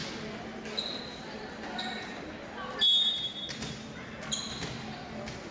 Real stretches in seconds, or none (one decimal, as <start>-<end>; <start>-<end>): 0.0-1.0